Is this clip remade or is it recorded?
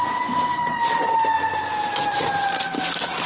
recorded